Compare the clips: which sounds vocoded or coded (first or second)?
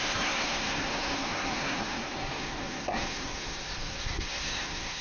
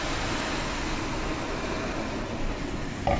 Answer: first